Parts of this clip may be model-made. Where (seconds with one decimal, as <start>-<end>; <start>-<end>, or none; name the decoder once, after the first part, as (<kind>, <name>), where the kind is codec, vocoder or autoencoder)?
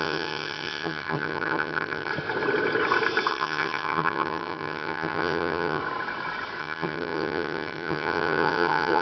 0.0-2.1 (vocoder, HiFi-GAN); 3.3-5.8; 6.6-9.0